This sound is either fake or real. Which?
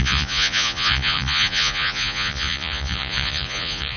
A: fake